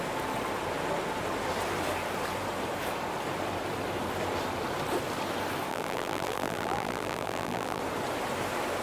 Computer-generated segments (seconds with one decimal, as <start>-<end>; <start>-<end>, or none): 5.7-7.8